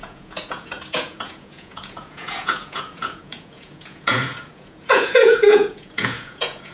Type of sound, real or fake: fake